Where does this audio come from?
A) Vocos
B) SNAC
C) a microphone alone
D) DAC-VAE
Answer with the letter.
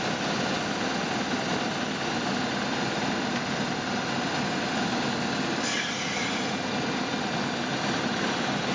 C